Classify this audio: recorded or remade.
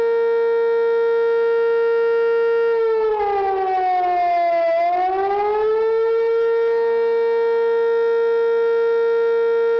recorded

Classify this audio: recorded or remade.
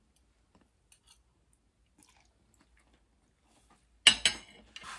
recorded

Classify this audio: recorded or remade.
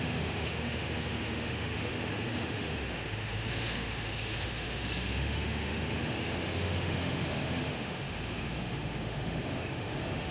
remade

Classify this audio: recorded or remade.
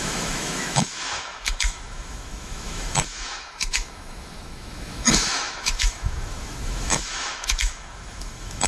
remade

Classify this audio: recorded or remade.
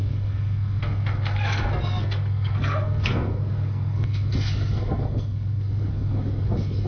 remade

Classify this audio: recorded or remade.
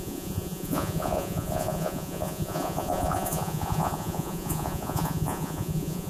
remade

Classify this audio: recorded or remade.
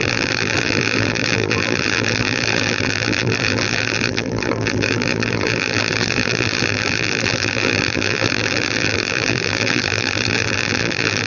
remade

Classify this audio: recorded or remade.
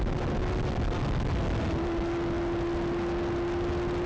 recorded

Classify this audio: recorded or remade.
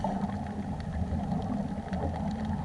recorded